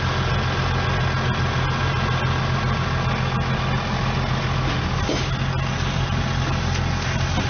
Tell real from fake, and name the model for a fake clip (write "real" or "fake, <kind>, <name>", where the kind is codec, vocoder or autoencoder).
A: real